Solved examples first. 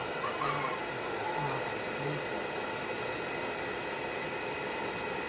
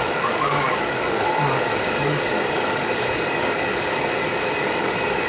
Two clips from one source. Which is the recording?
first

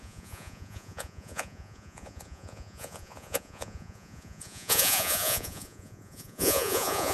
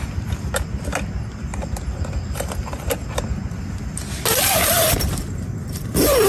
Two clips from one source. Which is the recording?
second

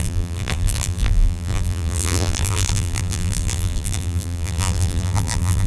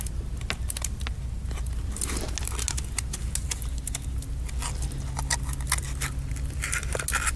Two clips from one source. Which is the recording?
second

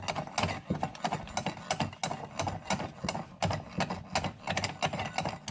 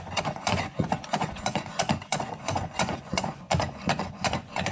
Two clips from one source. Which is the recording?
first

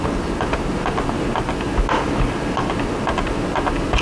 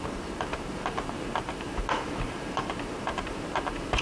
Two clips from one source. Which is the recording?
first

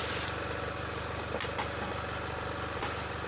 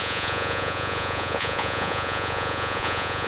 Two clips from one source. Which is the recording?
first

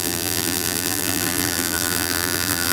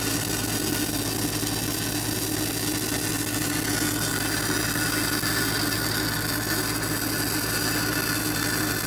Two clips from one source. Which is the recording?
second